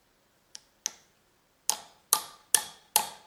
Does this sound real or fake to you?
real